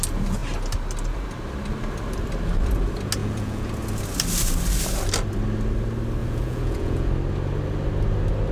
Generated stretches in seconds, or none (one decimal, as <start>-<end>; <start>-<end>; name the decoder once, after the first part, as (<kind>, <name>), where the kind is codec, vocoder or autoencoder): 3.2-3.7 (vocoder, Vocos); 6.2-7.1